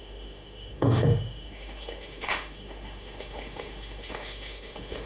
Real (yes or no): no